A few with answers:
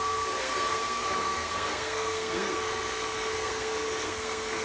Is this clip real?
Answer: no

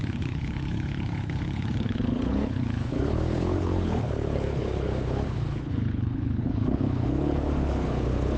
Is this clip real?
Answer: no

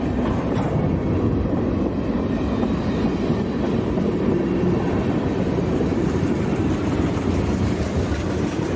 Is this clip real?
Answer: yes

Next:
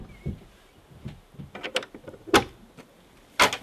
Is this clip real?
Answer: yes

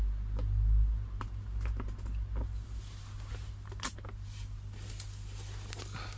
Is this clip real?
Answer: yes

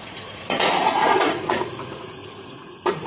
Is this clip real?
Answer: no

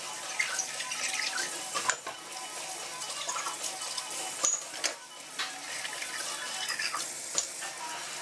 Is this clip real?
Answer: yes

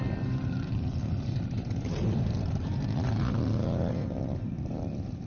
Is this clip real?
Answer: no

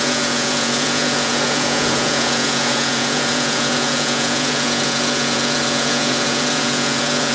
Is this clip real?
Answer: no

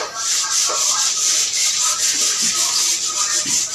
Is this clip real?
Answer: yes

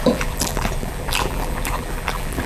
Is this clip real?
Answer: no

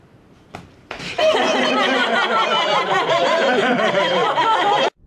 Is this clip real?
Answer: no